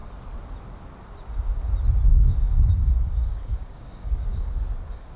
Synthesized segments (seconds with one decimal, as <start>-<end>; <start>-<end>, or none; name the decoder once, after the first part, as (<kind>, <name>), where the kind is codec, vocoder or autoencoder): 2.1-5.2 (codec, DAC)